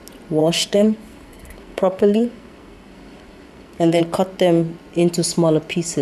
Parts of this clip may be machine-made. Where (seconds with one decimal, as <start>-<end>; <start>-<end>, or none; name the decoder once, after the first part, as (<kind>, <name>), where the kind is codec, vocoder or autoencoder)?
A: 0.4-4.0 (codec, SNAC)